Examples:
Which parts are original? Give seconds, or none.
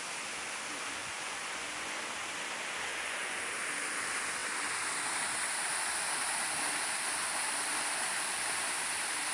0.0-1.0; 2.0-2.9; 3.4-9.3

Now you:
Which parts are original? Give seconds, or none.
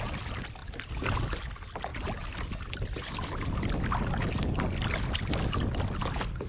0.0-6.5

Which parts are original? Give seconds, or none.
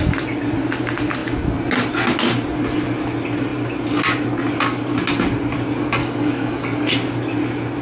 0.0-6.0; 6.9-7.8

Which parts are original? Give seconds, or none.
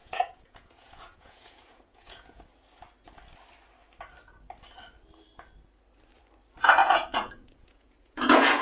2.4-6.8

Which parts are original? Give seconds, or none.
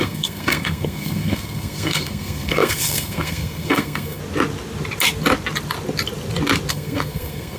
4.2-6.7